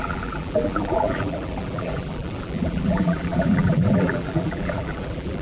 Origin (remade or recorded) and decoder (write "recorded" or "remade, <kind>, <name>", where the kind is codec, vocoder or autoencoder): remade, vocoder, BigVGAN v2